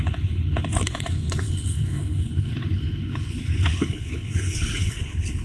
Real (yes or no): no